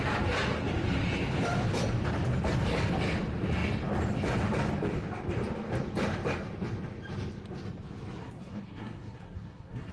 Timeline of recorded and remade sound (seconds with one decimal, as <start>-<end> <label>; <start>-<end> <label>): 0.0-8.2 recorded; 8.2-9.9 remade